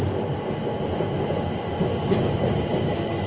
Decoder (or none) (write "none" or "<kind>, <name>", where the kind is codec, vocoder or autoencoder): none